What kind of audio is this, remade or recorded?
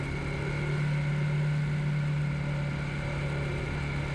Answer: recorded